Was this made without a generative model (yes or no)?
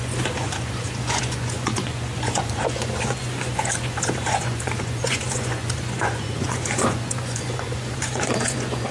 no